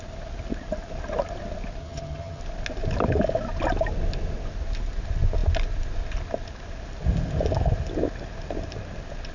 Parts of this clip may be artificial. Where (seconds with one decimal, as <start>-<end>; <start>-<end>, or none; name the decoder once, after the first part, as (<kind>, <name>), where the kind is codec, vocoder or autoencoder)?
1.8-2.4 (vocoder, HiFi-GAN)